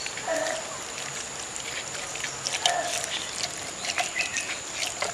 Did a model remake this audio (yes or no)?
no